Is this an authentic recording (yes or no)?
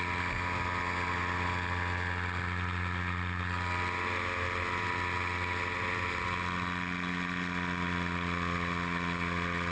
yes